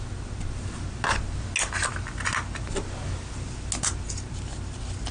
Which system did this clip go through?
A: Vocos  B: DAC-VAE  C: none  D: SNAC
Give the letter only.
C